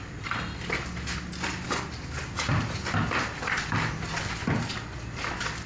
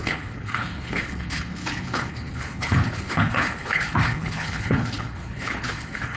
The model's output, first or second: second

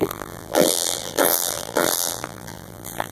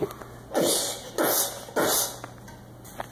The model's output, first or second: first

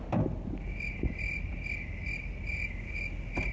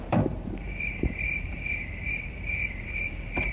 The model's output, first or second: second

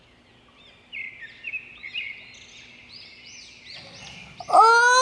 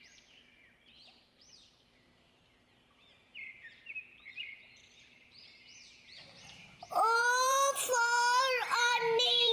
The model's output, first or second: second